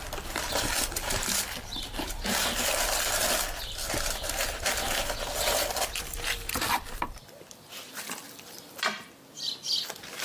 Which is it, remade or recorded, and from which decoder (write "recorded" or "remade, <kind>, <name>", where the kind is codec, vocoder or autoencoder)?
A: recorded